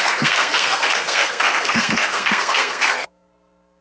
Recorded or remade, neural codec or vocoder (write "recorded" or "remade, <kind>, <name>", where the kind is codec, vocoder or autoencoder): remade, codec, SNAC